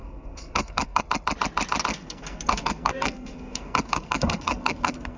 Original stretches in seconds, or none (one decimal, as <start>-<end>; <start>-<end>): 1.0-1.9